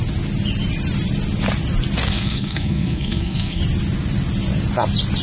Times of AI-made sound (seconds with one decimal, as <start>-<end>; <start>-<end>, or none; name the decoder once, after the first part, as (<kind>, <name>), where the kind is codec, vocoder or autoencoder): 2.1-3.6 (codec, SNAC)